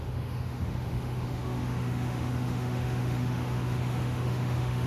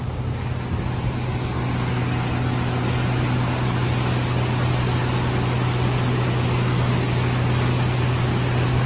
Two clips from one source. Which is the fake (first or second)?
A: first